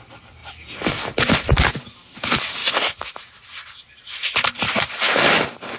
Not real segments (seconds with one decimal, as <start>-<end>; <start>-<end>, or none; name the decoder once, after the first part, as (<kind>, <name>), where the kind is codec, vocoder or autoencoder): none